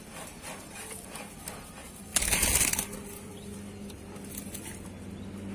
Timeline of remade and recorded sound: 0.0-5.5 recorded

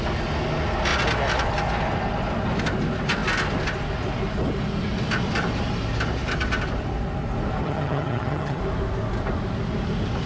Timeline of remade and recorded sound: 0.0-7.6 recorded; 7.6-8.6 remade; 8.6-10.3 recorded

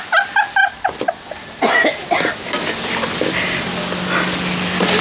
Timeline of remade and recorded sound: 0.0-5.0 recorded

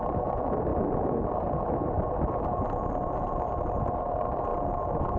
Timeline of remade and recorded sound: 0.0-5.2 recorded